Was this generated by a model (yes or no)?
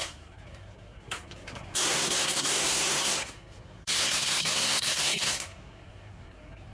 yes